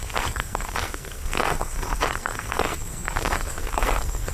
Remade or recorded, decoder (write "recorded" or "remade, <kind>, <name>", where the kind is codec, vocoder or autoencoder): remade, codec, SNAC